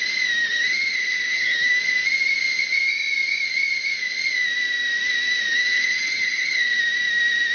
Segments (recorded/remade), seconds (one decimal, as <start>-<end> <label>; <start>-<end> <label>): 0.0-0.4 recorded; 0.4-1.7 remade; 1.7-5.5 recorded; 5.5-6.8 remade; 6.8-7.5 recorded